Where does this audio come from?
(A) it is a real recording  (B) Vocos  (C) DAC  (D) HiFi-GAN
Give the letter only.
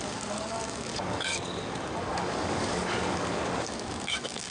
C